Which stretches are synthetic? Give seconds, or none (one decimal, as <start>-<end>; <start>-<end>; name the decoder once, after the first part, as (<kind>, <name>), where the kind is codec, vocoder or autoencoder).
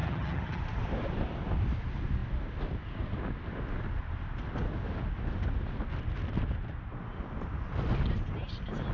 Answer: 0.0-0.6 (vocoder, HiFi-GAN)